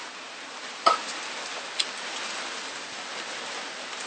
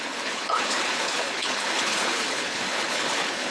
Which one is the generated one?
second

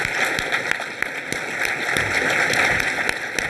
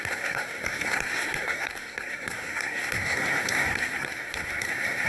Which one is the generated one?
second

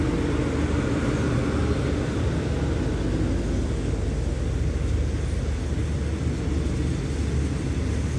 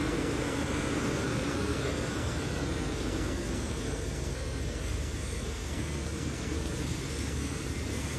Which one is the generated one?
second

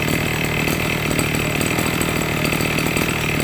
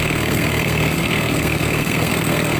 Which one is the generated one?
second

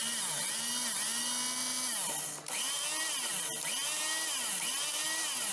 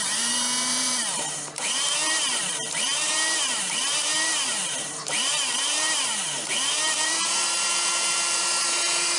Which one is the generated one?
second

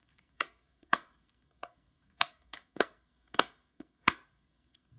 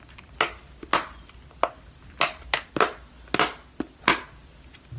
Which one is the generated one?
first